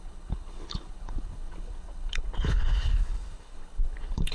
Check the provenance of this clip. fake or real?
fake